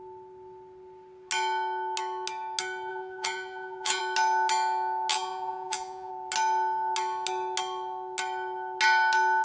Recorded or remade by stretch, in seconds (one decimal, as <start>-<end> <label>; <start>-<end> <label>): 0.0-2.9 recorded; 2.9-4.0 remade; 4.0-5.1 recorded; 5.1-6.1 remade; 6.1-9.4 recorded